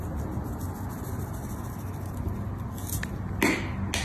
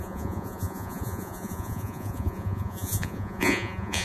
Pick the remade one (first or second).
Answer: second